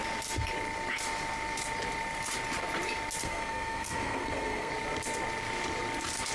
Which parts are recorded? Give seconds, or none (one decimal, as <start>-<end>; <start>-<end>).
0.0-3.2; 4.7-6.3